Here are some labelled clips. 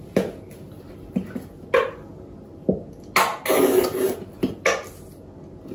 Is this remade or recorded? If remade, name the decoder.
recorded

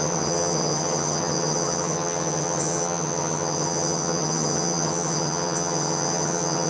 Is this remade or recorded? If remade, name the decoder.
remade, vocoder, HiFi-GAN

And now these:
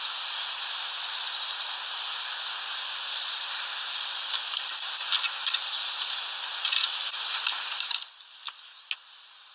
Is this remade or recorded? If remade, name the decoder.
recorded